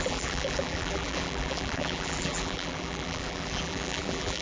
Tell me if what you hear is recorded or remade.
remade